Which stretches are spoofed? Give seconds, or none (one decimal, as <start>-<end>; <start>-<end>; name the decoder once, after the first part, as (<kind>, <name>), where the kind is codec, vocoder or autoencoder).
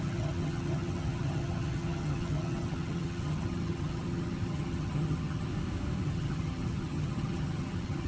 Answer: 0.0-5.5 (vocoder, HiFi-GAN); 6.0-8.1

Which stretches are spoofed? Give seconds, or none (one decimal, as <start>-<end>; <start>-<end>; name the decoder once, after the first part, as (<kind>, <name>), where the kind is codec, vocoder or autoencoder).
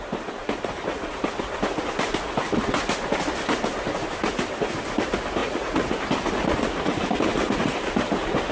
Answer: 5.4-6.0 (vocoder, Vocos)